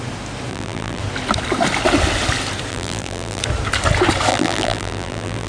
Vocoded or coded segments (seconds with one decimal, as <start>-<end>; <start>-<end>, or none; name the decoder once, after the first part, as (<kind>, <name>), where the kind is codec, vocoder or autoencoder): 0.5-1.0 (vocoder, BigVGAN v2); 2.7-3.4; 4.3-5.5